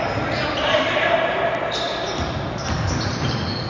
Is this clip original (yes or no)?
no